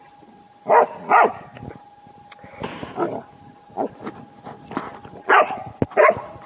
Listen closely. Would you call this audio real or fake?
real